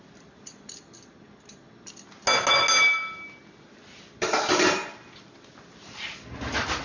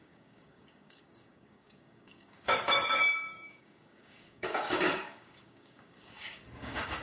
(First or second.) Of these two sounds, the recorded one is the first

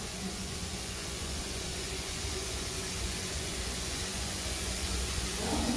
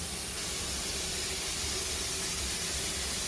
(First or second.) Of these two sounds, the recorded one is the second